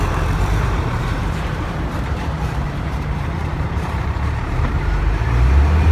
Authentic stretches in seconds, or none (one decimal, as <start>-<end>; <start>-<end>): none